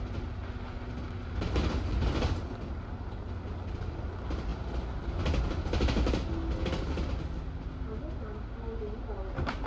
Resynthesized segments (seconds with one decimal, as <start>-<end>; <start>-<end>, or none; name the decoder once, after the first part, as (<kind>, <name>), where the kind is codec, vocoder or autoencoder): none

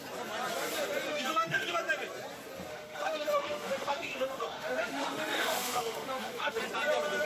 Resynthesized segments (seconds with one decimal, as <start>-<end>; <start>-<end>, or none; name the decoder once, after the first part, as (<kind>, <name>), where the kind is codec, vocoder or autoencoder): 1.1-1.7 (autoencoder, DAC-VAE); 2.7-6.6